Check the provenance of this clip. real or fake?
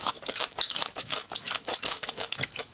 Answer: fake